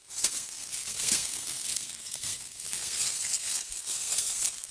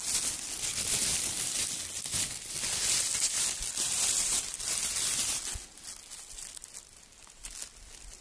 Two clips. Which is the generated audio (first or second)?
first